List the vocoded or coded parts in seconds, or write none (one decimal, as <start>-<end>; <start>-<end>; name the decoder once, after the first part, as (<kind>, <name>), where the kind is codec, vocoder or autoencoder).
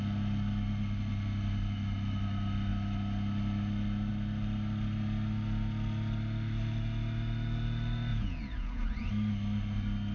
8.1-9.1 (vocoder, Vocos)